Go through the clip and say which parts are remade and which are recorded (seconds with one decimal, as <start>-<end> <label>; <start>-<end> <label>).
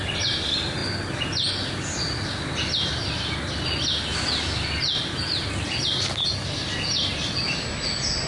0.0-8.3 recorded